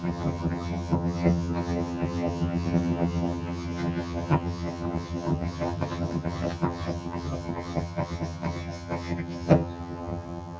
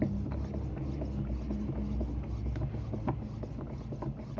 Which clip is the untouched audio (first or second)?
second